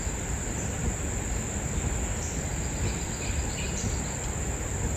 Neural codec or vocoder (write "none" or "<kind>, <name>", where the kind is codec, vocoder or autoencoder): none